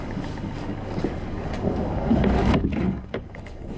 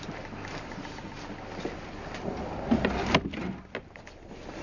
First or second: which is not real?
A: first